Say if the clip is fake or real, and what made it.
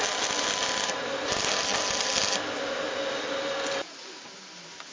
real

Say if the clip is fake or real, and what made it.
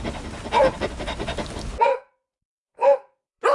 fake, vocoder, BigVGAN v2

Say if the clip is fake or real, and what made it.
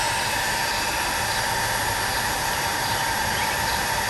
fake, vocoder, BigVGAN v2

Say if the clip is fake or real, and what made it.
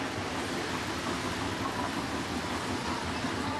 real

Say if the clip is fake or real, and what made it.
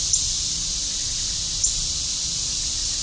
real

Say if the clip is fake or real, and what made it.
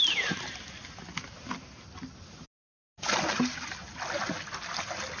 real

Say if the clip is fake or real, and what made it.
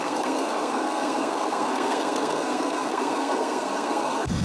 fake, codec, SNAC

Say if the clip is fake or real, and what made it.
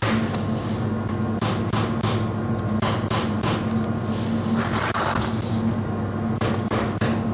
real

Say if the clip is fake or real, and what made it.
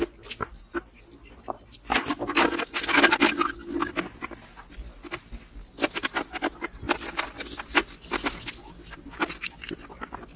real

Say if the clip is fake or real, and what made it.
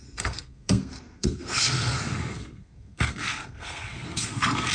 fake, codec, SNAC